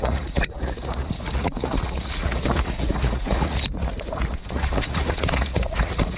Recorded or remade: remade